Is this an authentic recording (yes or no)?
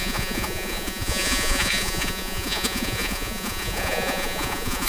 no